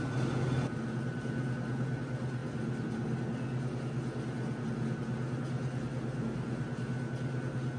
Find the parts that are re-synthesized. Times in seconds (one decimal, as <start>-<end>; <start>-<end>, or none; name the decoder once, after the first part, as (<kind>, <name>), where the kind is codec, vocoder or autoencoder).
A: none